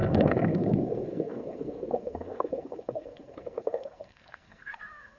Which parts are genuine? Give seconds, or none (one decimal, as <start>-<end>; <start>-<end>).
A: none